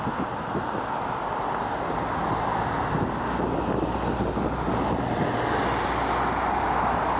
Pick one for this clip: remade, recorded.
recorded